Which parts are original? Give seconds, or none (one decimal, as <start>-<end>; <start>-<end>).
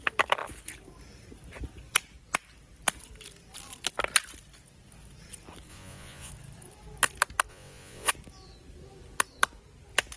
0.0-5.7; 6.3-7.5; 8.1-10.2